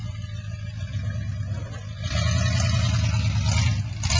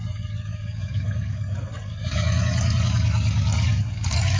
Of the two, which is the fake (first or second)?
second